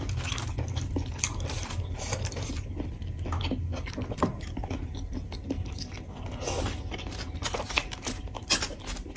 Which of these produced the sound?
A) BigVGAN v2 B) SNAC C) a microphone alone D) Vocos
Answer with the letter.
C